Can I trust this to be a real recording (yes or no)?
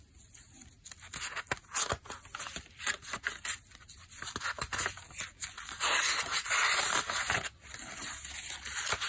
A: yes